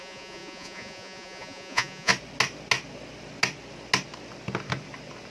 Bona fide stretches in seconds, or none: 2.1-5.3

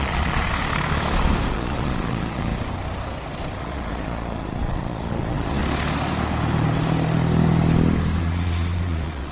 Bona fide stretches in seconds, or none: 0.5-1.5; 2.5-3.6; 5.6-8.2